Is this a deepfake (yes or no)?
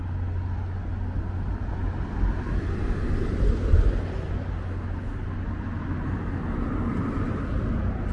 no